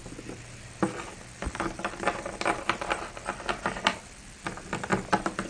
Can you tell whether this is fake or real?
real